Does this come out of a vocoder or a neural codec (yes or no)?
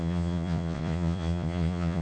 yes